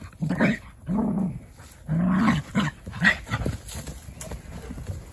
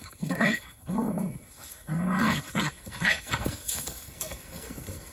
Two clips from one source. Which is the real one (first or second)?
first